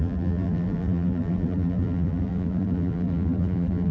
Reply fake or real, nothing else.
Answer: fake